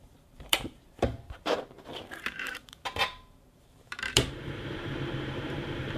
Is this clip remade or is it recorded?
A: remade